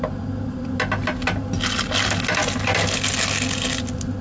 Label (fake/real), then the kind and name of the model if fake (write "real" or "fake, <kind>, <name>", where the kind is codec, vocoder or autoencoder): real